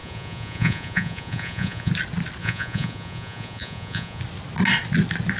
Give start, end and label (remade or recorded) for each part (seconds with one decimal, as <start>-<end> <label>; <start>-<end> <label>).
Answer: 0.0-1.9 remade; 1.9-2.4 recorded; 2.4-4.2 remade; 4.2-5.4 recorded